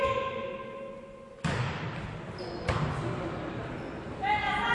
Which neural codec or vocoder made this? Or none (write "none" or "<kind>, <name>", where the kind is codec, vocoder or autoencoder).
none